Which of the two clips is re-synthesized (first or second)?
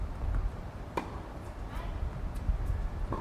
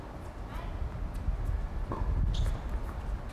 first